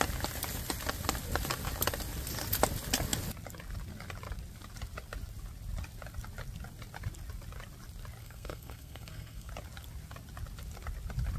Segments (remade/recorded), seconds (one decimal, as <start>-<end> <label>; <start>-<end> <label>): 0.0-8.2 recorded; 8.2-9.5 remade; 9.5-11.4 recorded